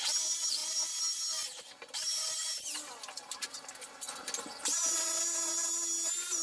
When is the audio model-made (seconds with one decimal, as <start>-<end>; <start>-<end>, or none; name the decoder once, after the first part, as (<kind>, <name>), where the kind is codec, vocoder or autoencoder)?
none